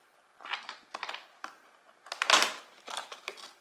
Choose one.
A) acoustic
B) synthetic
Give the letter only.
A